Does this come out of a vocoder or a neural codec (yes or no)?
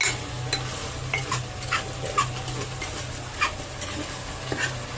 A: no